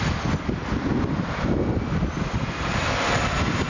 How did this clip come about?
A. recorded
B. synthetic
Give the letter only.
A